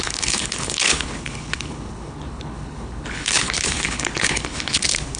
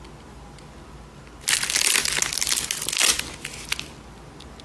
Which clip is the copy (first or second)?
first